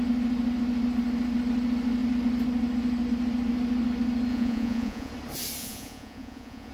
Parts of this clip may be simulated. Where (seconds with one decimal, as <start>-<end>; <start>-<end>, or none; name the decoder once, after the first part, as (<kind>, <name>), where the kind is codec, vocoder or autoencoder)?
4.3-5.1 (vocoder, Vocos); 5.6-6.7